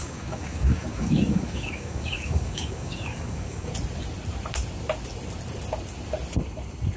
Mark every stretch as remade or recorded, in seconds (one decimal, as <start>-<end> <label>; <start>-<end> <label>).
0.0-3.7 remade; 3.7-7.0 recorded